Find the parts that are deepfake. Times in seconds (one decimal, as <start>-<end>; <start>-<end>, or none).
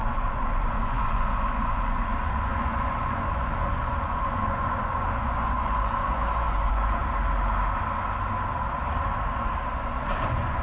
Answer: 0.0-7.0; 9.7-10.6